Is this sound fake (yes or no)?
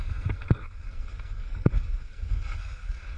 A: yes